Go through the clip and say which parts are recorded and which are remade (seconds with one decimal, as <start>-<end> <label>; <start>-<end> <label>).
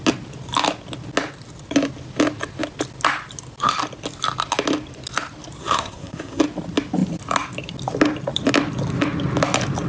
0.0-5.6 recorded; 5.6-6.4 remade; 6.4-9.9 recorded